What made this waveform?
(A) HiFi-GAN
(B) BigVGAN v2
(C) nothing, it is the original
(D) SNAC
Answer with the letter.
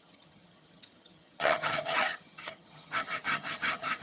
A